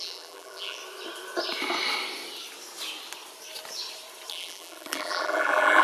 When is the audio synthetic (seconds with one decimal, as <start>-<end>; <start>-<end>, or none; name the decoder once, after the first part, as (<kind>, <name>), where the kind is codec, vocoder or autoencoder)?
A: 0.0-0.8 (vocoder, BigVGAN v2); 4.3-5.8